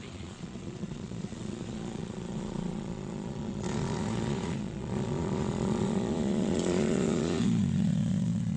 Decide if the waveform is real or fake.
fake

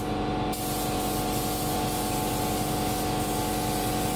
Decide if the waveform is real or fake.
real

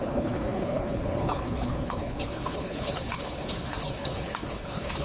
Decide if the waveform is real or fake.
fake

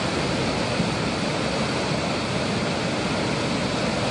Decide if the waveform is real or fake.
real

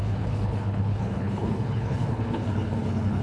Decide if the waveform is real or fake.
fake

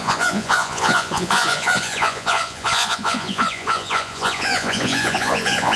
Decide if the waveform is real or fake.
fake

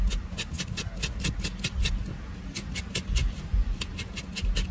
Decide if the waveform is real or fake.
real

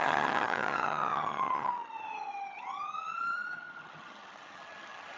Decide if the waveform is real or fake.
fake